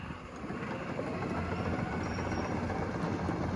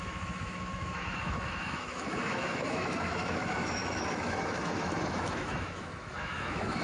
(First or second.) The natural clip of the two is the first